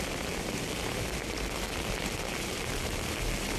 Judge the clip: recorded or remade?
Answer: recorded